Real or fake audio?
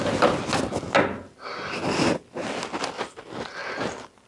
real